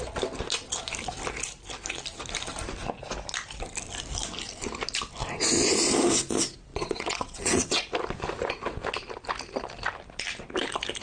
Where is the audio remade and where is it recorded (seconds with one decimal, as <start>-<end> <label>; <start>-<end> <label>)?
0.0-6.7 recorded; 6.7-7.8 remade; 7.8-11.0 recorded